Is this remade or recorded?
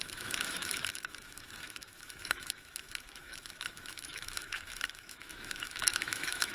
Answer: remade